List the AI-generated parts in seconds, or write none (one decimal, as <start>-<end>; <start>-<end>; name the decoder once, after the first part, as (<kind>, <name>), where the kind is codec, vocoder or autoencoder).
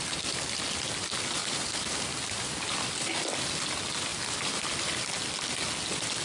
1.4-3.2 (vocoder, BigVGAN v2); 4.1-5.0